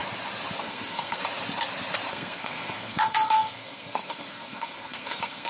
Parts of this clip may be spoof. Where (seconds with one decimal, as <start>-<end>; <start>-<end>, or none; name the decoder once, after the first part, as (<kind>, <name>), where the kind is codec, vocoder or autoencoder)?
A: 0.6-1.2 (codec, SNAC); 2.1-5.5